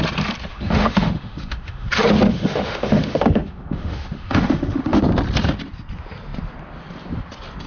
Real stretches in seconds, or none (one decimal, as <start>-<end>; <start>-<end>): 0.0-0.5; 1.9-2.3; 5.0-7.7